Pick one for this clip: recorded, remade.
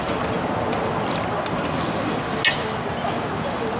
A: recorded